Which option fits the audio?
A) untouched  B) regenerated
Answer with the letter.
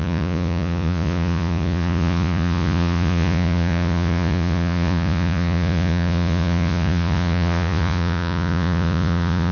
B